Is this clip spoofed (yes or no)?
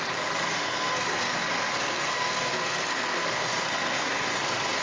yes